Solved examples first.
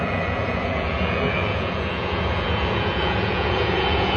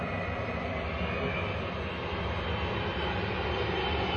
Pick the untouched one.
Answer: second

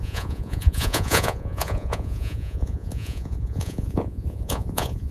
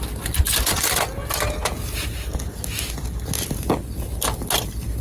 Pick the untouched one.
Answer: second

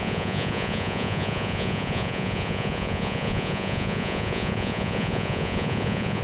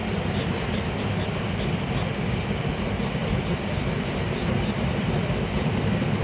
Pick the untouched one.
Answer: second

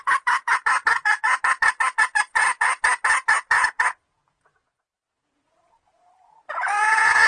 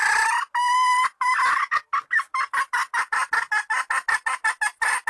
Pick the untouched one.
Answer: second